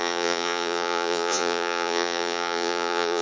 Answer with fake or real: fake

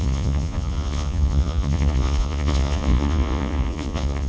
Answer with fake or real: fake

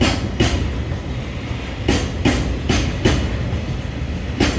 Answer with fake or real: real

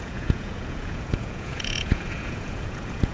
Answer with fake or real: fake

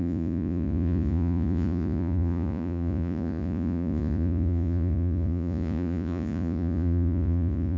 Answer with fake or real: fake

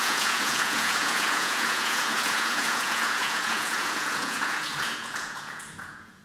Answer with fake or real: fake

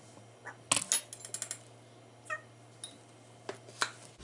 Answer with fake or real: real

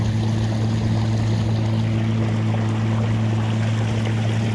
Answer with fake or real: real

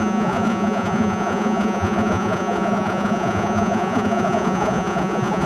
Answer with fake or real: fake